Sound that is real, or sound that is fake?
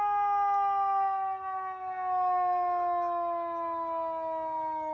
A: real